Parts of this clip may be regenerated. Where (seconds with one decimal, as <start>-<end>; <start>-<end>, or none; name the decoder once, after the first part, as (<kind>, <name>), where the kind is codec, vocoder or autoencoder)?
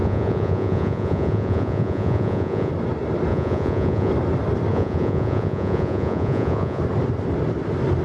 0.0-2.7 (vocoder, Vocos); 3.3-4.1; 4.7-6.8